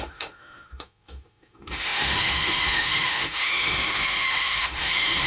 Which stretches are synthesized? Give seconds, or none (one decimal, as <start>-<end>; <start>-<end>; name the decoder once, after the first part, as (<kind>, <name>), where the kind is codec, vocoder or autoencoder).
0.0-5.3 (autoencoder, DAC-VAE)